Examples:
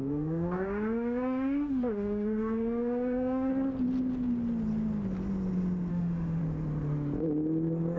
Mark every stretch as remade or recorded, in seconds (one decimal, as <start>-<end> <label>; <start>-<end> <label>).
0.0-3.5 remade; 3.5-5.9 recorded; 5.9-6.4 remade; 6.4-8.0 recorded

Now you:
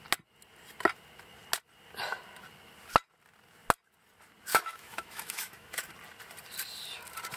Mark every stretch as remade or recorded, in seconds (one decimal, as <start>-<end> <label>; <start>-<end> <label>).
0.0-4.5 recorded; 4.5-5.9 remade; 5.9-7.4 recorded

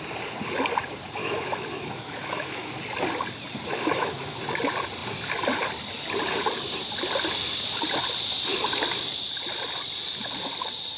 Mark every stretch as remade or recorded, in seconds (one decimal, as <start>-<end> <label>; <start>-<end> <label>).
0.0-1.2 recorded; 1.2-2.7 remade; 2.7-3.7 recorded; 3.7-4.4 remade; 4.4-11.0 recorded

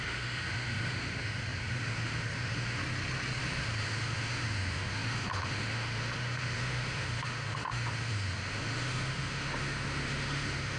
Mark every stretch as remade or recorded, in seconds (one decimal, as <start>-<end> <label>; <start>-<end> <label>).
0.0-2.8 remade; 2.8-3.4 recorded; 3.4-10.8 remade